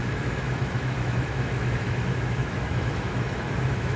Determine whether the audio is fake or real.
fake